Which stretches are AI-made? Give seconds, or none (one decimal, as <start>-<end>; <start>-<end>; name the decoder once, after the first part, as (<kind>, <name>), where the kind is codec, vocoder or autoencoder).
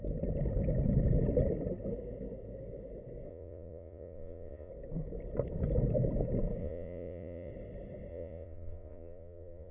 3.3-4.7 (vocoder, Vocos); 6.6-7.5; 8.1-9.7